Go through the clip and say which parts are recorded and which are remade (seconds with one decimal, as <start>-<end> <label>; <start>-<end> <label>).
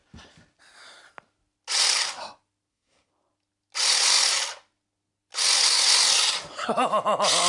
0.0-2.7 recorded; 2.7-3.1 remade; 3.1-7.5 recorded